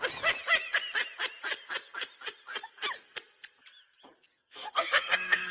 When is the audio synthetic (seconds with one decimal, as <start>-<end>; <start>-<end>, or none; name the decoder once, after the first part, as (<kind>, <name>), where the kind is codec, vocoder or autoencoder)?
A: 4.3-5.5 (codec, SNAC)